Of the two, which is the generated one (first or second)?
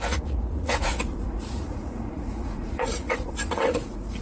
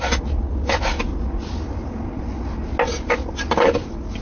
first